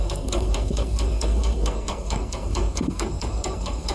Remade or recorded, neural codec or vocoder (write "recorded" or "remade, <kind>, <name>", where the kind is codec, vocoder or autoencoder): remade, codec, SNAC